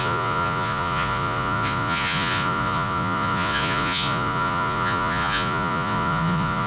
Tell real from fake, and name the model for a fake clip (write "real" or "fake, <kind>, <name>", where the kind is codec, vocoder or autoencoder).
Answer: fake, vocoder, Vocos